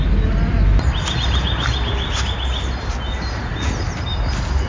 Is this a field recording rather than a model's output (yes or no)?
yes